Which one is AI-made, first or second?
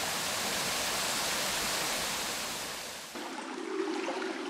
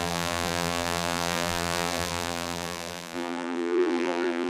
second